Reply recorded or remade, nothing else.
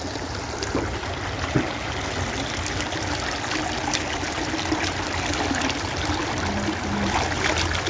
recorded